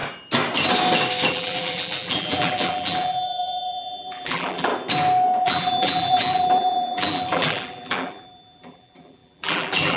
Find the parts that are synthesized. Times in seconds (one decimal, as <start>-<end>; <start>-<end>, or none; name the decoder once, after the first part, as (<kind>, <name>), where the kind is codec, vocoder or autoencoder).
1.3-4.7 (vocoder, BigVGAN v2); 5.4-10.0